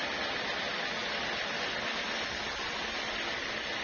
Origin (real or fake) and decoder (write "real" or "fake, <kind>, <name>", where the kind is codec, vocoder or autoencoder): real